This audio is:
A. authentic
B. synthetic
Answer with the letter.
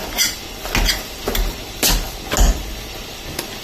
A